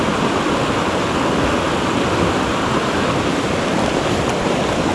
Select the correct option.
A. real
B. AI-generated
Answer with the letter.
A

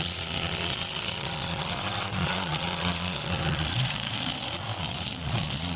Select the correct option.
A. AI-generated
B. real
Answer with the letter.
A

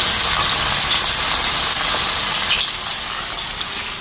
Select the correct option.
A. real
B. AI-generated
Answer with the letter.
A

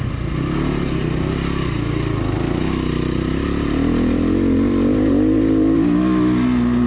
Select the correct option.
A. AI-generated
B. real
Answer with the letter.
B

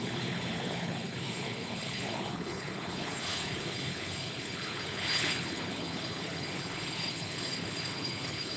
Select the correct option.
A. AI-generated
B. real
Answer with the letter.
A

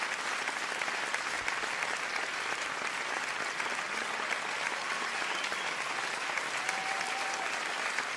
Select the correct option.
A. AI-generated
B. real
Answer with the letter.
B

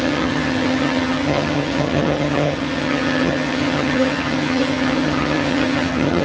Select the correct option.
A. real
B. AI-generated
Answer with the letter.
B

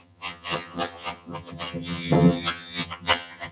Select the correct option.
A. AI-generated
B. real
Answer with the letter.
A